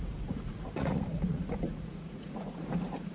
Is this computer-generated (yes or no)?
yes